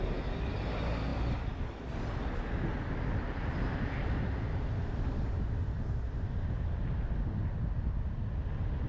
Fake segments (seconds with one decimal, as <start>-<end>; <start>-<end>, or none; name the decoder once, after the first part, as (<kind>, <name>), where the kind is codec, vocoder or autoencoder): none

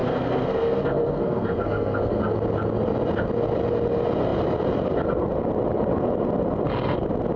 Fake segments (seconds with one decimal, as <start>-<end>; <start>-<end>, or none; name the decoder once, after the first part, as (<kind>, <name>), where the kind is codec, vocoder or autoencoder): 0.0-2.2 (codec, SNAC)

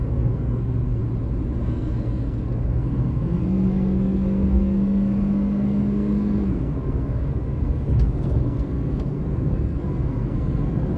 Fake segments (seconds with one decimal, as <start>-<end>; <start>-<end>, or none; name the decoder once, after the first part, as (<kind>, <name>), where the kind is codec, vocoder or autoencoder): 0.0-1.0 (codec, SNAC); 1.6-11.0